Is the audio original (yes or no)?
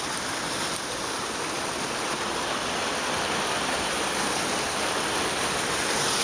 yes